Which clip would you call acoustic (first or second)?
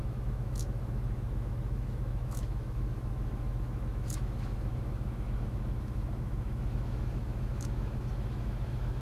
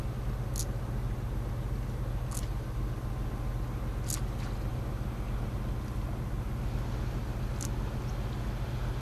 second